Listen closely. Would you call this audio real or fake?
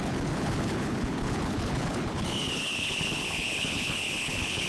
fake